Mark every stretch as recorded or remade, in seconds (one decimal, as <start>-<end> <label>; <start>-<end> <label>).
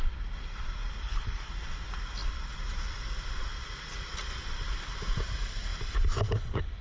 0.0-1.0 recorded; 1.0-1.5 remade; 1.5-6.8 recorded